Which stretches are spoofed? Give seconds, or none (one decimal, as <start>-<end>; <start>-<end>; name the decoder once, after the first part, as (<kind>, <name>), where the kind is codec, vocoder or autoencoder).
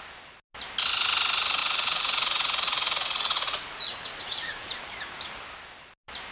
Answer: 1.6-4.8 (vocoder, Vocos)